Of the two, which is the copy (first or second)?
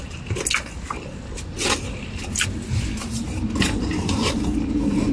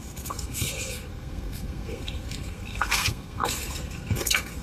second